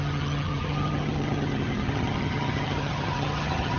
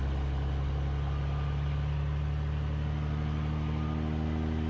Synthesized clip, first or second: first